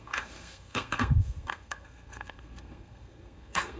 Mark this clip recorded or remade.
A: remade